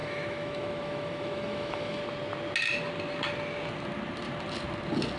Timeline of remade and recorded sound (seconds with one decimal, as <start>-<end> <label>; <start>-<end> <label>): 0.0-2.0 remade; 2.0-5.2 recorded